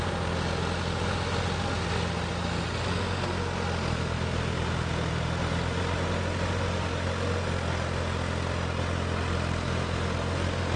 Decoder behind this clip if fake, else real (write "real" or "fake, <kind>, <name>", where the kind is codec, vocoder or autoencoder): real